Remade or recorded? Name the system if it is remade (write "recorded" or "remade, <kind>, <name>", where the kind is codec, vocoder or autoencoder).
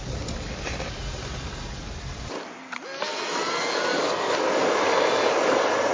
recorded